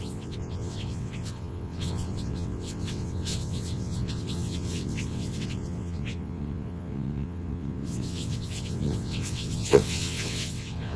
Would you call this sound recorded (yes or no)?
no